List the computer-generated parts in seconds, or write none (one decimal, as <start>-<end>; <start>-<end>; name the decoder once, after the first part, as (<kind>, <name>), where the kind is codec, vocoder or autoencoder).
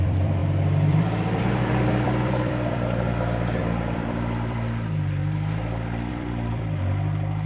0.0-7.5 (vocoder, BigVGAN v2)